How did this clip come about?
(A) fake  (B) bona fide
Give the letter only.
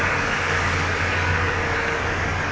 A